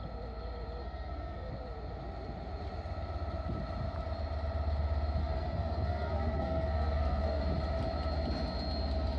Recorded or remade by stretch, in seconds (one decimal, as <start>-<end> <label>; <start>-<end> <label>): 0.0-0.8 recorded; 0.8-1.5 remade; 1.5-5.2 recorded; 5.2-7.4 remade; 7.4-9.2 recorded

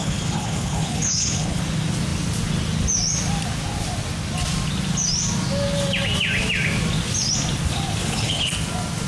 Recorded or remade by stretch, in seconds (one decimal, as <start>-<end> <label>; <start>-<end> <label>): 0.0-1.6 remade; 1.6-8.0 recorded; 8.0-8.5 remade; 8.5-9.1 recorded

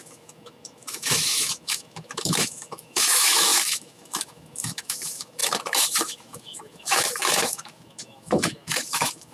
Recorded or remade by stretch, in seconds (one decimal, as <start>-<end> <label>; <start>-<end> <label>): 0.0-9.3 remade

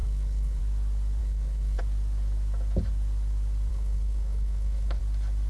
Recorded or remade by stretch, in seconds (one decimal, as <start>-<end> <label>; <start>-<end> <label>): 0.0-0.6 remade; 0.6-1.2 recorded; 1.2-1.8 remade; 1.8-3.7 recorded; 3.7-5.0 remade; 5.0-5.5 recorded

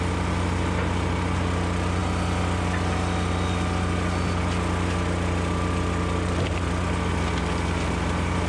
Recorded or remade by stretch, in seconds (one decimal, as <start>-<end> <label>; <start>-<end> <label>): 0.0-8.5 recorded

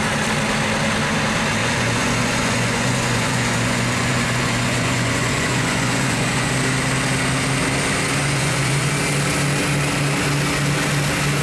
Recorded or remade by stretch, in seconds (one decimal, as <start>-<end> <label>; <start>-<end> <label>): 0.0-1.6 recorded; 1.6-6.5 remade; 6.5-8.2 recorded; 8.2-8.9 remade; 8.9-11.4 recorded

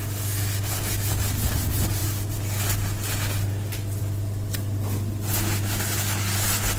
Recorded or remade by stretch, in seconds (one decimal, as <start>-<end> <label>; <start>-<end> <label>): 0.0-6.8 recorded